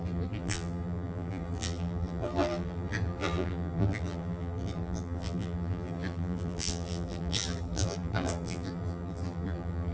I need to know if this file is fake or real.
fake